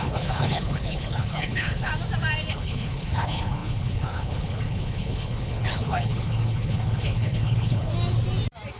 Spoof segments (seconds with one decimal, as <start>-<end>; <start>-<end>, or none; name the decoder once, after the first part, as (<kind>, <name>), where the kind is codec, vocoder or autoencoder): 0.0-1.9 (codec, HILCodec); 2.5-7.9